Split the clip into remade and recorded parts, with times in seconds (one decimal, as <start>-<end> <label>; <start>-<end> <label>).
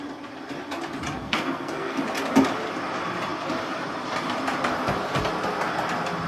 0.0-1.2 recorded; 1.2-2.0 remade; 2.0-6.3 recorded